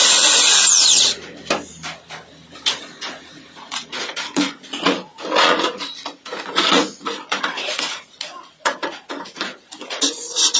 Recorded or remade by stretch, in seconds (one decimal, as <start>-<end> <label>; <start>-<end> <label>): 0.0-1.2 remade; 1.2-2.7 recorded; 2.7-10.6 remade